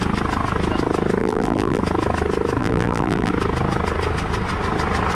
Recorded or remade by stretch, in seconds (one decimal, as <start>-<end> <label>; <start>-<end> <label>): 0.0-1.2 recorded; 1.2-1.8 remade; 1.8-2.6 recorded; 2.6-3.3 remade; 3.3-5.1 recorded